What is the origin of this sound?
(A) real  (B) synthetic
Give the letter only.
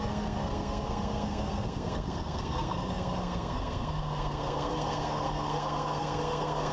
B